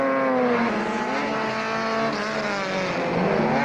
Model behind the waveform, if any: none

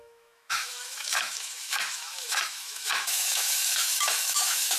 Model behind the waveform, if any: autoencoder, DAC-VAE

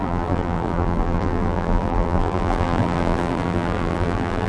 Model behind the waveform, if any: vocoder, BigVGAN v2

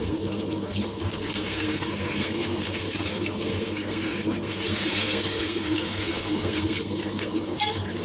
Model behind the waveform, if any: codec, SNAC